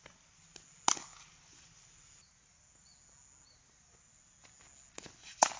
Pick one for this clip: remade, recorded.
recorded